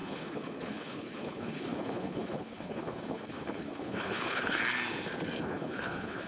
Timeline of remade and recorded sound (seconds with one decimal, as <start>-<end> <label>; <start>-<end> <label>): 0.0-4.6 remade; 4.6-5.4 recorded; 5.4-6.3 remade